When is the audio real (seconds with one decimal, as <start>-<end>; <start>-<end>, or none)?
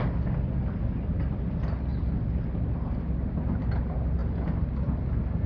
0.0-5.5